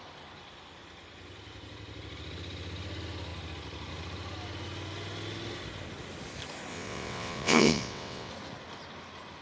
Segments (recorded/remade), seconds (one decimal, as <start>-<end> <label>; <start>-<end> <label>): 0.0-6.7 recorded; 6.7-8.3 remade; 8.3-9.4 recorded